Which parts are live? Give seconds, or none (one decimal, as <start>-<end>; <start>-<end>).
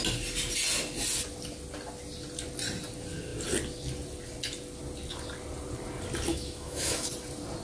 0.0-6.3; 7.1-7.6